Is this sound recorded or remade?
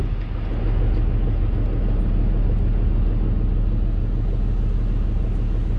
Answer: recorded